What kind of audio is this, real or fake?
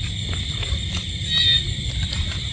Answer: real